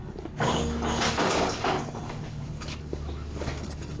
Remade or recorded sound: remade